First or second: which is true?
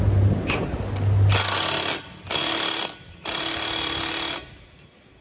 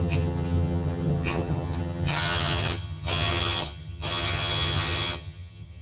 first